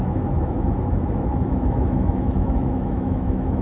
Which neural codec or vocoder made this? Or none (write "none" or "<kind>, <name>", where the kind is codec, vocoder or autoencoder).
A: autoencoder, DAC-VAE